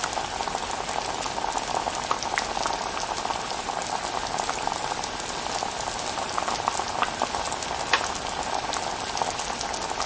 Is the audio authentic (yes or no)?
yes